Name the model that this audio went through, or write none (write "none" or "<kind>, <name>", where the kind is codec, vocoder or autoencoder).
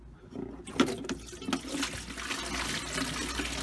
none